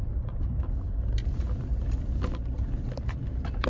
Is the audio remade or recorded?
recorded